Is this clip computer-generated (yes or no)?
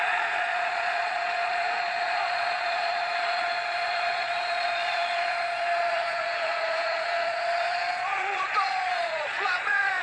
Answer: yes